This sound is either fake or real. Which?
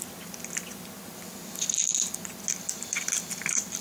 real